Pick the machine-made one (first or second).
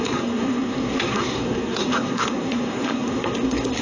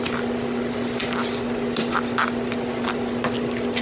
first